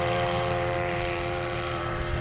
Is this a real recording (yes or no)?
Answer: no